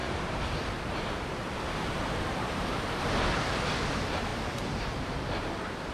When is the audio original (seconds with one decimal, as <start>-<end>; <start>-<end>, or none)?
3.5-5.9

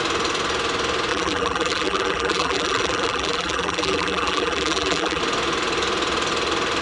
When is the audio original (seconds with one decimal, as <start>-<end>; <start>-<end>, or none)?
0.0-1.1; 5.2-6.8

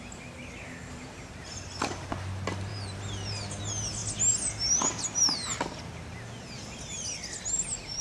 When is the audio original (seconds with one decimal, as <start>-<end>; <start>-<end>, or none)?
0.0-0.8; 1.6-2.7; 3.6-8.0

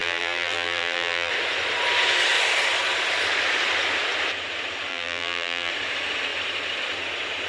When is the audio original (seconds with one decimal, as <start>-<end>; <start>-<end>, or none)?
1.3-4.9; 5.7-7.5

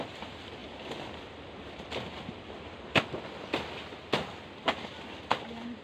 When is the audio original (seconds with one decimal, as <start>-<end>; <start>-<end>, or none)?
0.0-5.8